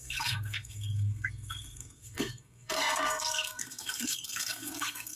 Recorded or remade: remade